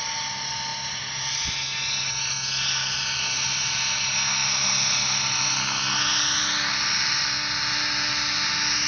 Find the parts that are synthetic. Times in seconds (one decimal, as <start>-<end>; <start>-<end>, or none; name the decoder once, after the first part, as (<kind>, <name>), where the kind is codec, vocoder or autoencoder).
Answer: none